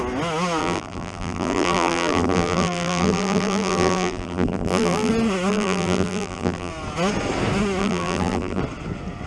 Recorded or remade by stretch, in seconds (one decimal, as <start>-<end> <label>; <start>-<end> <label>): 0.0-0.6 recorded; 0.6-5.1 remade; 5.1-5.5 recorded; 5.5-6.7 remade; 6.7-7.8 recorded; 7.8-8.6 remade; 8.6-9.3 recorded